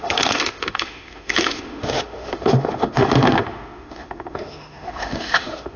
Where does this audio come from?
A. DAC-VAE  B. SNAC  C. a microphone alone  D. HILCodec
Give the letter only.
A